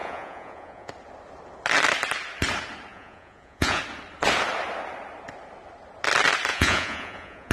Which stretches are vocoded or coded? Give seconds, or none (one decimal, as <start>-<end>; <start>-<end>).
0.0-0.9; 2.9-3.8; 6.5-7.5